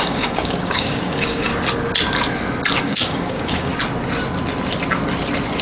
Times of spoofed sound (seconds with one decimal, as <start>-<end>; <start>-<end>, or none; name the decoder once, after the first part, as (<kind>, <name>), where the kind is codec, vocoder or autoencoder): 0.0-1.5 (codec, DAC); 2.8-3.7